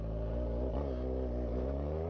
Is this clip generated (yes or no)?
no